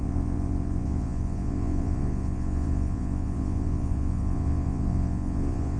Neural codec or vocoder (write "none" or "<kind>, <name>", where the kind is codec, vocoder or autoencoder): vocoder, Vocos